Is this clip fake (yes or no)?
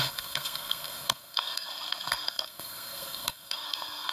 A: yes